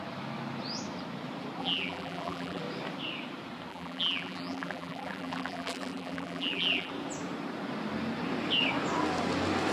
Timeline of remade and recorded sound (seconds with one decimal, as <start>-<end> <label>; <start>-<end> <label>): 0.0-1.6 recorded; 1.6-2.6 remade; 2.6-3.7 recorded; 3.7-6.9 remade; 6.9-9.7 recorded

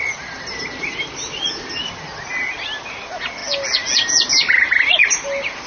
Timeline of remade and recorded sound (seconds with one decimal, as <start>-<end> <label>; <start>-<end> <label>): 0.0-5.7 recorded

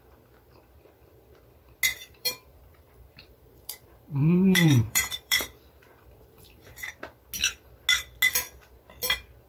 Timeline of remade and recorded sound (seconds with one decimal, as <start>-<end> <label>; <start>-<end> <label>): 0.0-1.9 recorded; 1.9-6.9 remade; 6.9-9.5 recorded